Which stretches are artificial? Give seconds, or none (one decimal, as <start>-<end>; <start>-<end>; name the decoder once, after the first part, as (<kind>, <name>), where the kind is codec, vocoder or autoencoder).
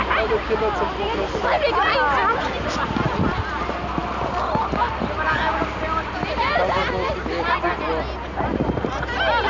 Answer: 4.0-6.5 (vocoder, BigVGAN v2)